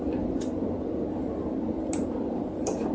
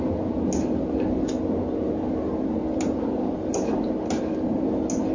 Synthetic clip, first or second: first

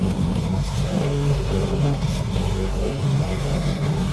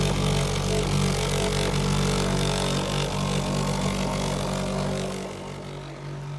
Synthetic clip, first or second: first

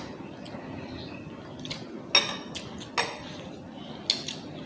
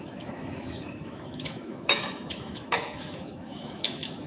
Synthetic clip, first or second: second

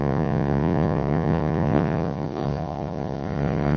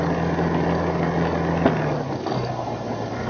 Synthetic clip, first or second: first